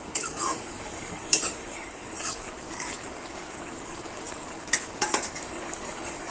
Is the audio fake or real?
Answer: fake